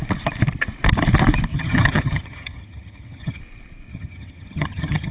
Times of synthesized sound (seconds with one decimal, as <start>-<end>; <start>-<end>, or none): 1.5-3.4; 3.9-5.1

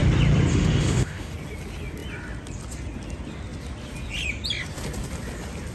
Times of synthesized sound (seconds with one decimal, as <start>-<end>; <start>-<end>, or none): 0.5-1.3

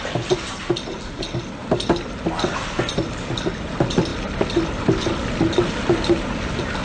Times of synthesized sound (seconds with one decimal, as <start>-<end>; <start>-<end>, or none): none